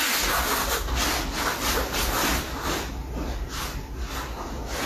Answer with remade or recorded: recorded